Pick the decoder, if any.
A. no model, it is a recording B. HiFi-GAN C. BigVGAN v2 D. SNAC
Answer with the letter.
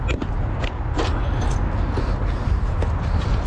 A